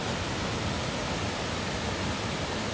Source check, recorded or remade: recorded